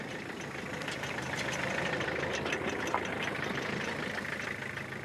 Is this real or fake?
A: real